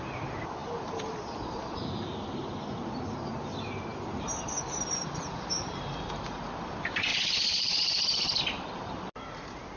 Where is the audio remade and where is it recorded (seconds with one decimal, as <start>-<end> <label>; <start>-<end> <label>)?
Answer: 0.0-0.6 recorded; 0.6-1.1 remade; 1.1-3.9 recorded; 3.9-6.3 remade; 6.3-7.1 recorded; 7.1-8.4 remade; 8.4-9.8 recorded